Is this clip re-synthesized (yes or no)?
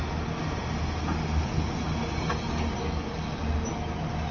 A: no